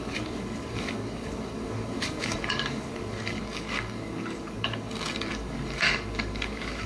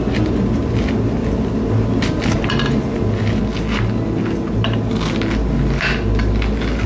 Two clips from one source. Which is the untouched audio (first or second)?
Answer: second